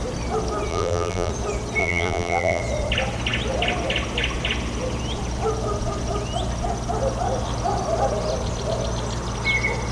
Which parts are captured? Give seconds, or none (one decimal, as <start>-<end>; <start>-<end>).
0.0-0.7; 1.3-1.8; 2.6-9.9